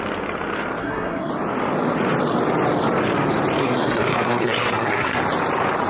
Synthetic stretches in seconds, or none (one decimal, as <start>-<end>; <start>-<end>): 0.8-1.3; 3.6-5.2